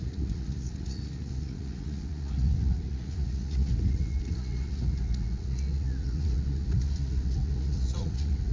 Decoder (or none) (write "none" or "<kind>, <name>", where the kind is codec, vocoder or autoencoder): vocoder, Vocos